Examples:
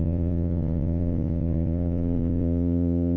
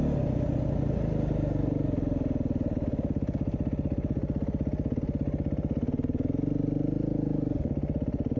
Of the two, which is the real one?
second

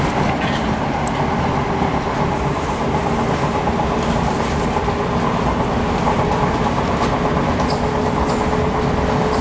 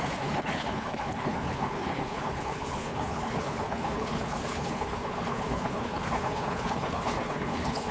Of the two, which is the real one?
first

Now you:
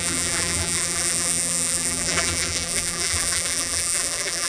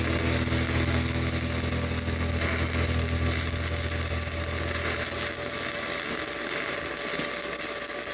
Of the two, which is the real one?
second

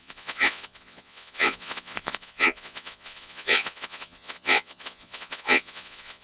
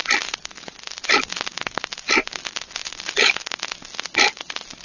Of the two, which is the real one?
second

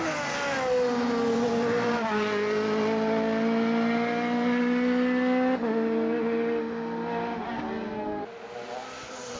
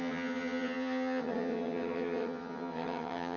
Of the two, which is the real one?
first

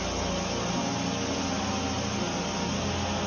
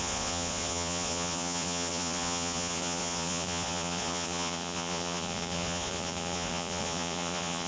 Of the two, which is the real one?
first